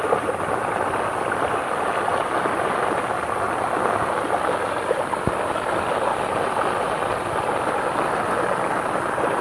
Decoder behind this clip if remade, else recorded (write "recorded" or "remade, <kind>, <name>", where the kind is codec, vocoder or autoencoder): recorded